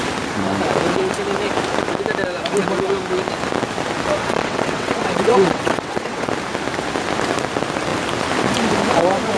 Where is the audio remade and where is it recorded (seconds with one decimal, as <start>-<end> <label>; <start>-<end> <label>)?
0.0-4.2 recorded; 4.2-6.3 remade; 6.3-9.4 recorded